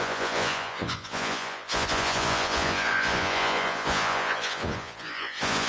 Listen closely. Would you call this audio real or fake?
fake